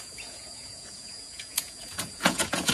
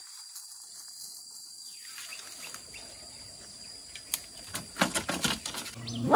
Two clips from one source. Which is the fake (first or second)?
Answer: first